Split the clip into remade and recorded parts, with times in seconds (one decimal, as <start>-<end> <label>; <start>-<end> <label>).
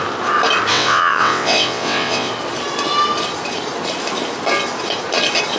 0.0-0.7 recorded; 0.7-2.3 remade; 2.3-5.6 recorded